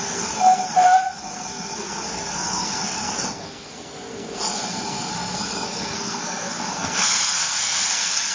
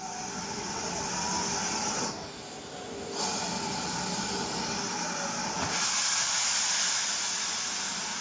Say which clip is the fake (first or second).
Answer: first